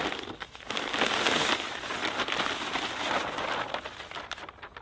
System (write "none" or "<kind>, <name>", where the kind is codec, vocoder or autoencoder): none